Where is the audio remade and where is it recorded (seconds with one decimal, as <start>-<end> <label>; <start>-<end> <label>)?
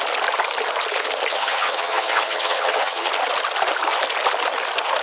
0.0-1.3 recorded; 1.3-3.1 remade; 3.1-5.0 recorded